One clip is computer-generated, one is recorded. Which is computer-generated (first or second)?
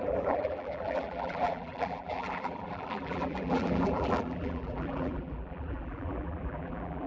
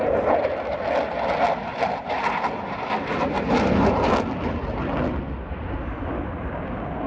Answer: first